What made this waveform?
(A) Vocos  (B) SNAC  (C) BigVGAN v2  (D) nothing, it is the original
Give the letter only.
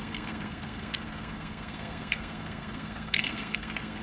B